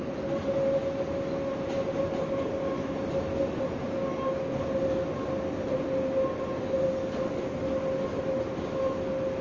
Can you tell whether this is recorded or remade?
recorded